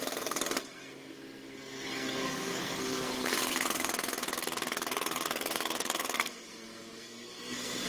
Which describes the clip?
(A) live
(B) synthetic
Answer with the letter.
B